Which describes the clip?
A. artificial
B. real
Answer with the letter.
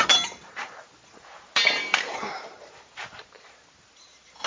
A